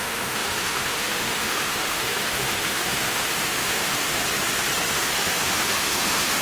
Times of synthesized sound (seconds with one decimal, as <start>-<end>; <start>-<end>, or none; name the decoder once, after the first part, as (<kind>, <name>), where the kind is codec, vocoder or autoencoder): 0.0-4.2 (autoencoder, DAC-VAE); 4.9-6.4